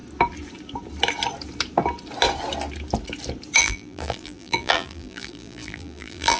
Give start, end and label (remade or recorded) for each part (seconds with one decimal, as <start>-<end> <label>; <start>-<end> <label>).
0.0-3.6 recorded; 3.6-6.4 remade